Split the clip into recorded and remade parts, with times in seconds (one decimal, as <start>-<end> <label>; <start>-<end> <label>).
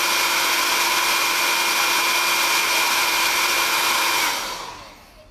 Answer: 0.0-2.6 recorded; 2.6-4.1 remade; 4.1-5.3 recorded